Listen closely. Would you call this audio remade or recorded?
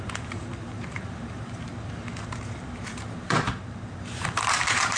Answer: remade